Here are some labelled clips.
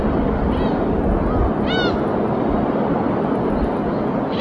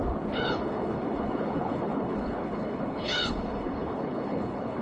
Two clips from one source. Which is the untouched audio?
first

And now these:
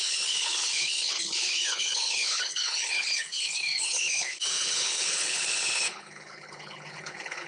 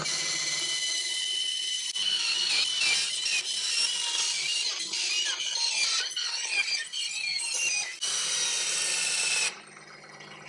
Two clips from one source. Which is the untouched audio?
second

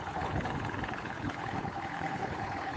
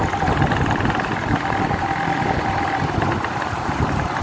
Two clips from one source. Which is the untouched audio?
second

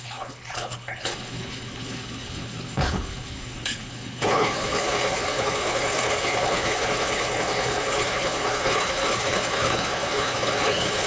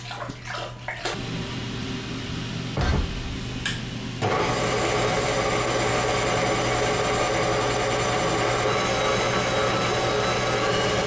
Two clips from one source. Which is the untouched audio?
second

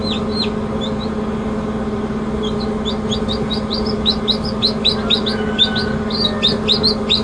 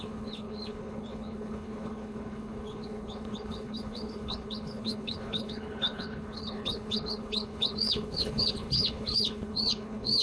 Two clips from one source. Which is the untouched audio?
first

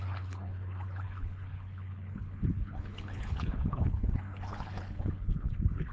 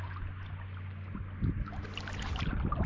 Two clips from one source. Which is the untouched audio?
second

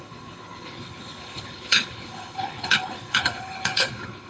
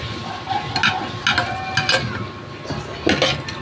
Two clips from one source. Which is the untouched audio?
second